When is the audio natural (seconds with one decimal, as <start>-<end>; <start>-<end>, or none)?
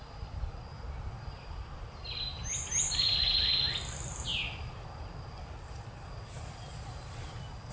0.0-7.7